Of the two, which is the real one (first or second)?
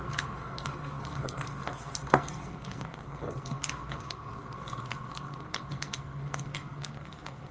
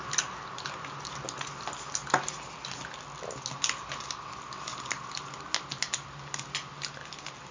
second